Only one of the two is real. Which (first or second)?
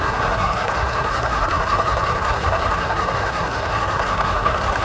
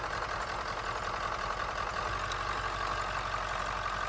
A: second